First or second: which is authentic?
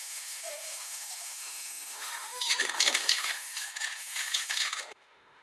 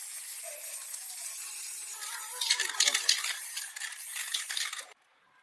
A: second